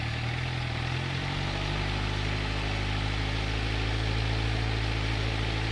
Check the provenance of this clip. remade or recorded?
recorded